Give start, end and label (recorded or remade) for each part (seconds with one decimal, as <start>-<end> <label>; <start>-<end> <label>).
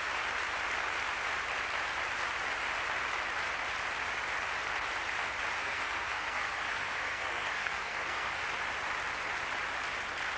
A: 0.0-5.6 recorded; 5.6-8.4 remade; 8.4-10.4 recorded